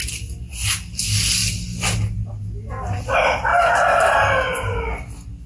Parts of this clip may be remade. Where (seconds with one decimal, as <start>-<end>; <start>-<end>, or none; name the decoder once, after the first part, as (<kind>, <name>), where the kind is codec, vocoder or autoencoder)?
none